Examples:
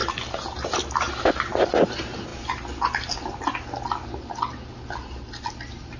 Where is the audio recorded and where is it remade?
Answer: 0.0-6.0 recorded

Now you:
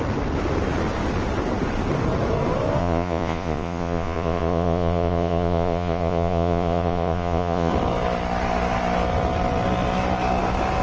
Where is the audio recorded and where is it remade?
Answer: 0.0-2.8 recorded; 2.8-7.7 remade; 7.7-10.8 recorded

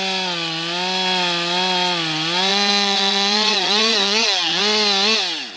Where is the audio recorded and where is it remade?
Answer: 0.0-2.5 recorded; 2.5-4.6 remade; 4.6-5.6 recorded

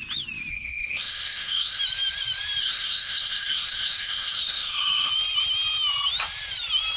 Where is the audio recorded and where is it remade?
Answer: 0.0-0.5 recorded; 0.5-1.8 remade; 1.8-2.6 recorded; 2.6-5.1 remade; 5.1-7.0 recorded

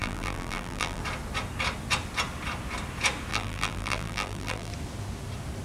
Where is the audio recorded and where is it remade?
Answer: 0.0-1.0 remade; 1.0-3.3 recorded; 3.3-4.7 remade; 4.7-5.6 recorded

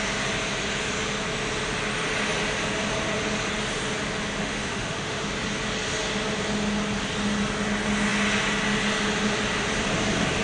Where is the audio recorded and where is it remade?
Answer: 0.0-4.4 recorded; 4.4-5.3 remade; 5.3-10.4 recorded

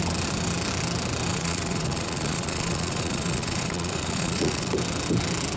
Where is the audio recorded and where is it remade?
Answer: 0.0-1.3 recorded; 1.3-4.7 remade; 4.7-5.6 recorded